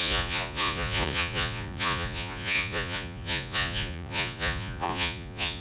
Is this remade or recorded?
remade